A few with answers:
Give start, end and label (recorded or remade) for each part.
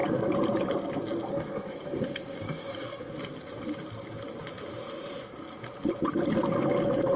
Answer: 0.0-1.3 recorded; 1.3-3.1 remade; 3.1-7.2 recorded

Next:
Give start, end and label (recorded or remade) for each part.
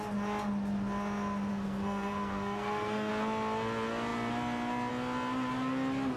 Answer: 0.0-1.5 recorded; 1.5-3.1 remade; 3.1-6.2 recorded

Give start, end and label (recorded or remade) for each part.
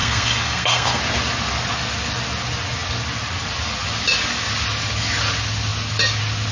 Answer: 0.0-1.0 remade; 1.0-6.5 recorded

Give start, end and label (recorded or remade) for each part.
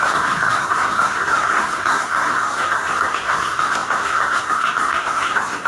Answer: 0.0-5.7 remade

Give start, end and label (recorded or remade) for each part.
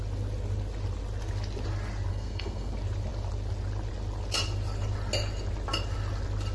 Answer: 0.0-2.1 recorded; 2.1-2.7 remade; 2.7-6.5 recorded